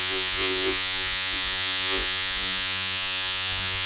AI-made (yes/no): yes